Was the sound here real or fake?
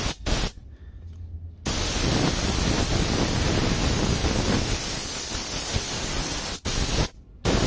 real